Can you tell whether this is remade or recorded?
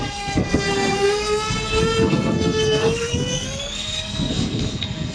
remade